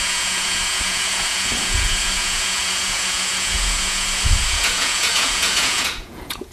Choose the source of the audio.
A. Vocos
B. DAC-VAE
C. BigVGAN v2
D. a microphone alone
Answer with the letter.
A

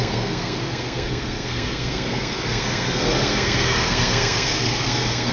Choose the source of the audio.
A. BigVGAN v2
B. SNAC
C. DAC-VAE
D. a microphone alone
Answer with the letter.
B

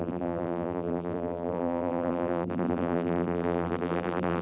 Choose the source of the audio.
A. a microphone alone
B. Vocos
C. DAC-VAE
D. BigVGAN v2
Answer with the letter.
D